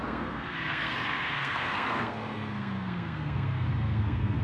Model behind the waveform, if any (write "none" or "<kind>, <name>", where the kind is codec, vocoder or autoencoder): codec, SNAC